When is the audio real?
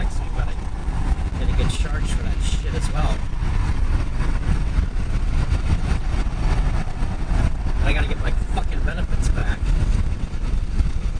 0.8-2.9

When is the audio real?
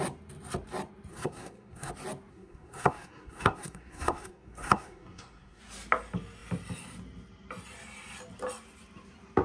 0.0-1.1; 1.9-2.3; 5.6-9.4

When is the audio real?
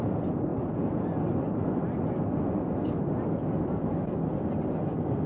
0.0-5.3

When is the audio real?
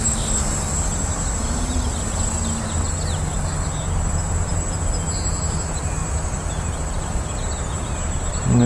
0.0-8.7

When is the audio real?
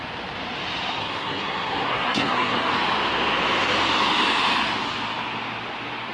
0.0-1.0; 2.7-6.1